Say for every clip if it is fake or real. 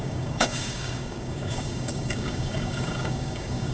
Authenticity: fake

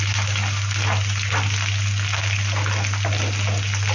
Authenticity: real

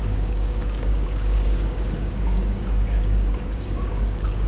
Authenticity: fake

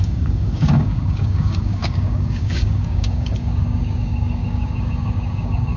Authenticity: fake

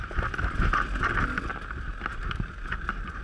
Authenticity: real